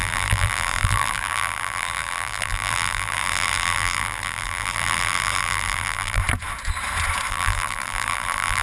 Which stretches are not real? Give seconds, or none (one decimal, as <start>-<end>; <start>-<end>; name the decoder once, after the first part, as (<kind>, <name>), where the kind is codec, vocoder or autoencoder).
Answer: 0.0-6.2 (vocoder, BigVGAN v2); 7.3-8.6